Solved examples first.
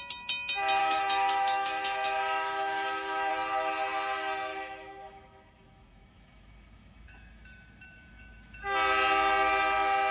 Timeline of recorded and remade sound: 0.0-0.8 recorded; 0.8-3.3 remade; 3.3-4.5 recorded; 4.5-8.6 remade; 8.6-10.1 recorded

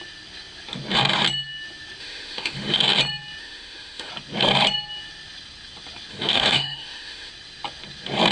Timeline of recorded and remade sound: 0.0-2.0 recorded; 2.0-2.8 remade; 2.8-3.4 recorded; 3.4-4.1 remade; 4.1-6.1 recorded; 6.1-7.3 remade; 7.3-8.3 recorded

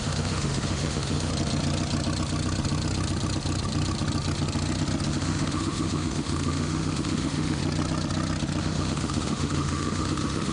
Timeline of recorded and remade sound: 0.0-1.3 remade; 1.3-5.1 recorded; 5.1-7.6 remade; 7.6-8.6 recorded; 8.6-10.5 remade

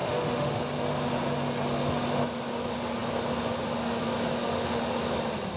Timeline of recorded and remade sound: 0.0-0.6 remade; 0.6-5.6 recorded

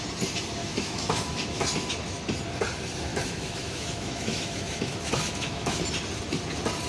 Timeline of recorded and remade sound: 0.0-0.6 recorded; 0.6-1.6 remade; 1.6-3.1 recorded; 3.1-5.8 remade; 5.8-6.9 recorded

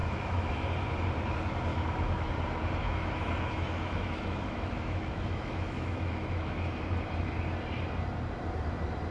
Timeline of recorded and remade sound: 0.0-0.8 remade; 0.8-1.7 recorded; 1.7-2.3 remade; 2.3-2.8 recorded; 2.8-6.8 remade; 6.8-9.1 recorded